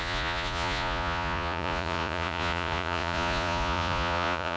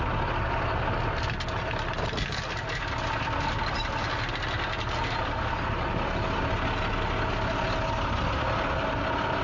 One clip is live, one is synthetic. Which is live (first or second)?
second